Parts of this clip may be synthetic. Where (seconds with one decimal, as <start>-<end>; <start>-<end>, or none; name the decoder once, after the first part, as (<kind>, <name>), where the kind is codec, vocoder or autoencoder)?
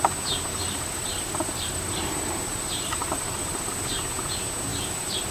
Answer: 0.5-3.7 (vocoder, BigVGAN v2); 4.7-5.3